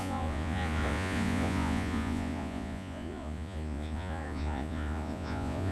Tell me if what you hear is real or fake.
fake